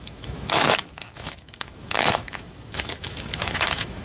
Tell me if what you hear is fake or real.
fake